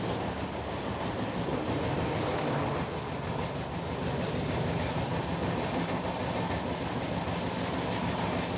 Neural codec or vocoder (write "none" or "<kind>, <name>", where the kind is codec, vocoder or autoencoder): none